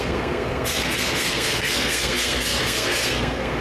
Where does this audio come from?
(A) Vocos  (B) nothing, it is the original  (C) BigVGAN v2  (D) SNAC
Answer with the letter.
D